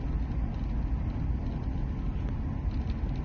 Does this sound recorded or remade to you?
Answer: recorded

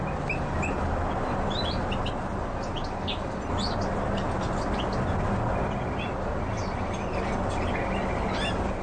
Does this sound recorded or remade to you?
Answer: recorded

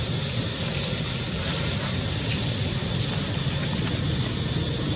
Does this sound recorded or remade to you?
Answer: recorded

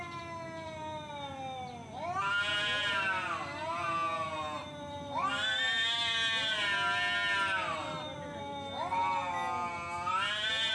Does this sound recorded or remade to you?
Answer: recorded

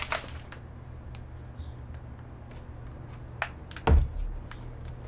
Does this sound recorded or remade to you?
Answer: recorded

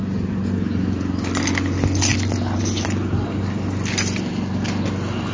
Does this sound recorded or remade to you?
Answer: recorded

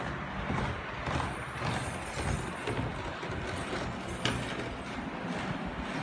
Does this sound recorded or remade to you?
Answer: recorded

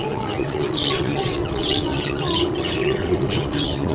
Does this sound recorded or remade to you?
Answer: remade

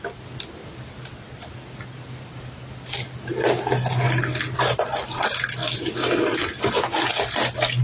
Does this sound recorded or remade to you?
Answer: recorded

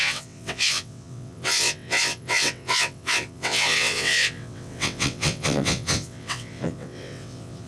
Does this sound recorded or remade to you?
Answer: remade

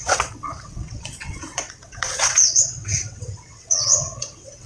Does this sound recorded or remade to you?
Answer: remade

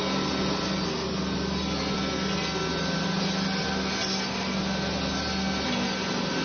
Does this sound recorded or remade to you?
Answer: recorded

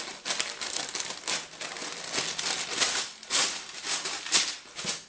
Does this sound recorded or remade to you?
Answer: recorded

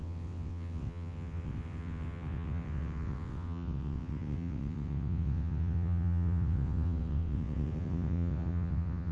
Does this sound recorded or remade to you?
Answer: remade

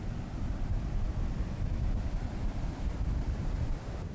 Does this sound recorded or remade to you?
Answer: recorded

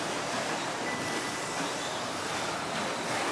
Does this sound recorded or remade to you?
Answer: recorded